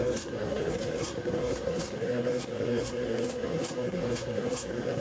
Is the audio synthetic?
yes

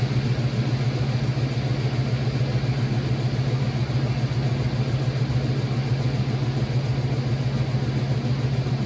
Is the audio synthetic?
no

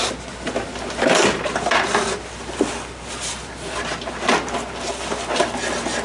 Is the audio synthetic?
no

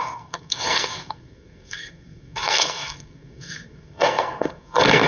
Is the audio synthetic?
yes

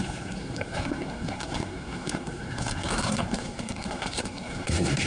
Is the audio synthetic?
yes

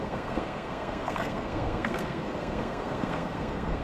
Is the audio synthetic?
yes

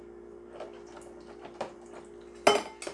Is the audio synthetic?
no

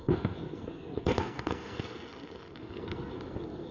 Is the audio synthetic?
yes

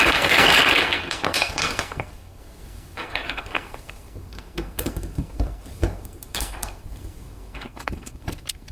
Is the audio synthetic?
yes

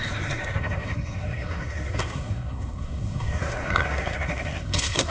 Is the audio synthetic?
yes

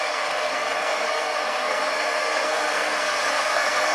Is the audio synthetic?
yes